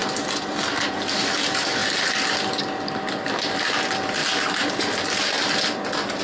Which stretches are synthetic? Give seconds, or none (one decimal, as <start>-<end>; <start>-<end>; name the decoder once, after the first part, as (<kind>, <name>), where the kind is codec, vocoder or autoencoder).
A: none